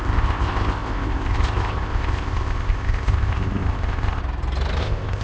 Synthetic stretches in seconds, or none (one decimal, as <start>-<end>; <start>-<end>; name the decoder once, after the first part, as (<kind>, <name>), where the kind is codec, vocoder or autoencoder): 0.0-4.2 (codec, ZipCodec); 4.8-5.2